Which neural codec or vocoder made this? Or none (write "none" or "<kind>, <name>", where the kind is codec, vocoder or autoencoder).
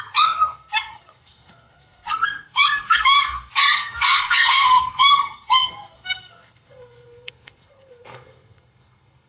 codec, SNAC